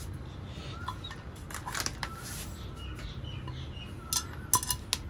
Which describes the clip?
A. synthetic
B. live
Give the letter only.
B